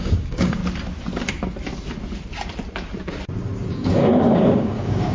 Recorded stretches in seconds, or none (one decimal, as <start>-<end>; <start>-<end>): 0.6-3.7